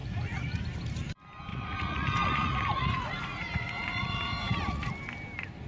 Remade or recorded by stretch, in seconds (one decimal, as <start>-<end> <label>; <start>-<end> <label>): 0.0-0.6 remade; 0.6-1.5 recorded; 1.5-4.9 remade; 4.9-5.7 recorded